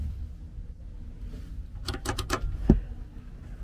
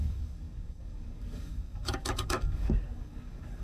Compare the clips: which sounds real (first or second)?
first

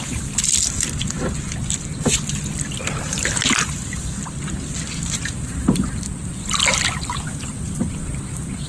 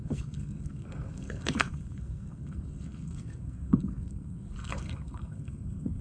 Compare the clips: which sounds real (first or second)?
first